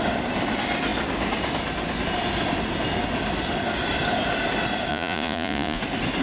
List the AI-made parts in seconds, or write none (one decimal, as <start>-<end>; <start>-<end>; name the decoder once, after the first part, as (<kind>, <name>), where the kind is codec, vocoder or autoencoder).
4.9-5.8 (vocoder, Vocos)